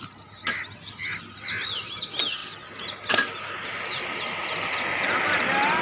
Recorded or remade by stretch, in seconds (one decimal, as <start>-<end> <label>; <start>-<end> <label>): 0.0-5.8 recorded